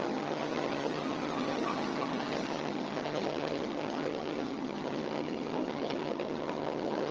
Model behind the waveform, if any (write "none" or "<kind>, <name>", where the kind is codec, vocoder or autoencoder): vocoder, HiFi-GAN